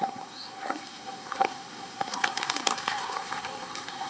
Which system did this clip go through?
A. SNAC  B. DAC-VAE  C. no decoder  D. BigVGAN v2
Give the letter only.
A